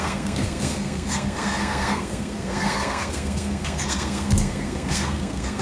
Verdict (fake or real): fake